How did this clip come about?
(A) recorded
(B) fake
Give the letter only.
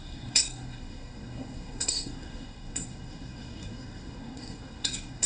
B